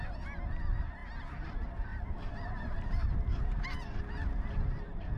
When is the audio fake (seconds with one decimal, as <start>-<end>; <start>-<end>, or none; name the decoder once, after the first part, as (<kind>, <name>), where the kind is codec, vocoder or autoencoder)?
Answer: 1.9-5.2 (vocoder, BigVGAN v2)